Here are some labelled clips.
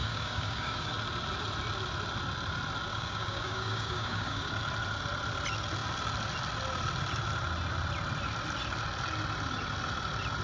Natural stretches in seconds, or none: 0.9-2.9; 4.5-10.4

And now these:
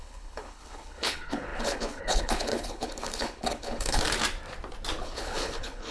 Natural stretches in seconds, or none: 4.0-5.0

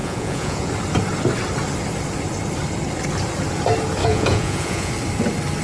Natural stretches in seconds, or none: 0.7-4.0; 4.9-5.6

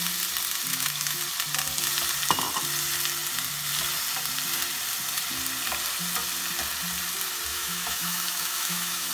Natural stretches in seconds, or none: 0.0-0.7; 1.2-7.5

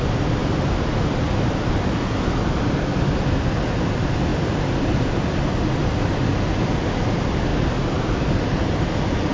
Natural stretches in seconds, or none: 0.0-9.3

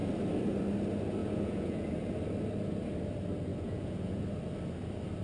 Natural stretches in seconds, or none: 0.0-1.2; 1.9-3.5; 4.2-5.2

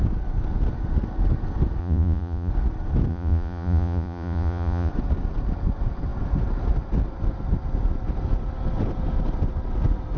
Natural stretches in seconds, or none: 0.0-1.8; 2.5-3.1; 4.9-10.2